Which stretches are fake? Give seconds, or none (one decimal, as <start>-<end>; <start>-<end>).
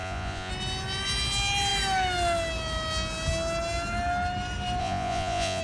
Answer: 0.0-0.5; 4.8-5.6